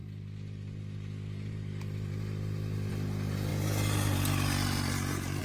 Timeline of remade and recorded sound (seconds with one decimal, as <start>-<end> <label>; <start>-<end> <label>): 0.0-5.4 recorded